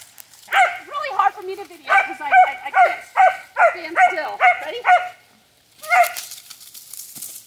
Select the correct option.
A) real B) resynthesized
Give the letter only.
A